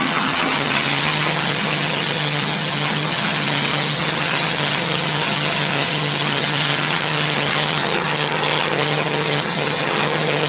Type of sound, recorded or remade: remade